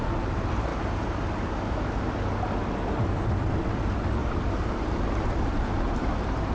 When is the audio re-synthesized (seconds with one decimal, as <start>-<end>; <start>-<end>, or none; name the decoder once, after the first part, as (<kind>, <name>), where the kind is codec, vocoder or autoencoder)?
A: 0.0-0.7 (vocoder, BigVGAN v2); 3.6-6.5